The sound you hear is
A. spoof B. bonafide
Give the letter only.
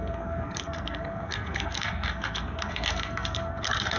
A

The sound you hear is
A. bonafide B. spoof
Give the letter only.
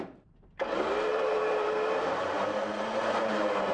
B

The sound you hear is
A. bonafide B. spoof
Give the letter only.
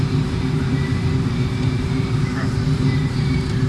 B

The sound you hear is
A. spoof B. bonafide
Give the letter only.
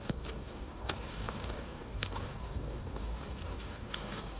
A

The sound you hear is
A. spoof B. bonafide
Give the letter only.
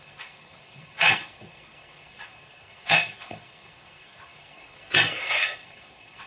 A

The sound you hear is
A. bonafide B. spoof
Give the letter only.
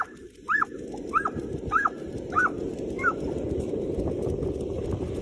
B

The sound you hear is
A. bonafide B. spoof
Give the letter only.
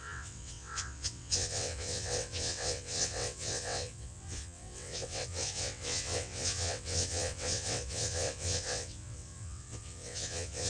B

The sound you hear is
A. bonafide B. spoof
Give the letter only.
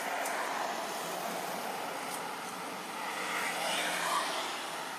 A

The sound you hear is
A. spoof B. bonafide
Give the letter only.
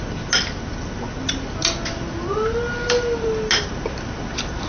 B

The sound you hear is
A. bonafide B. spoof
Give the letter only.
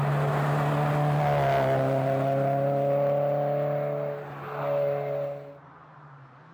A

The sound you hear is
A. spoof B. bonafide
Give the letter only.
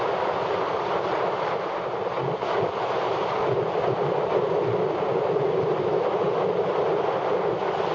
B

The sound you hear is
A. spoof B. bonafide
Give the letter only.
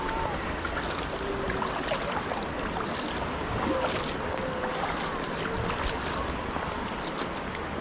B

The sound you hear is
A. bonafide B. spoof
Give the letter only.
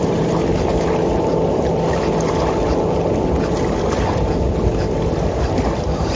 A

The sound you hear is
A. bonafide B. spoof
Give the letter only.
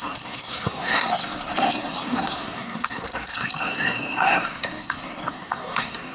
B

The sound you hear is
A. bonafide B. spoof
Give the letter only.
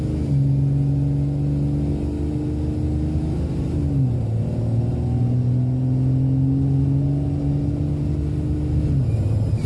A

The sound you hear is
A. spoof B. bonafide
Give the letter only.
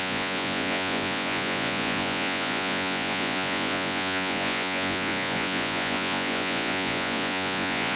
A